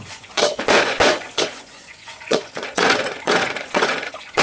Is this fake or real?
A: fake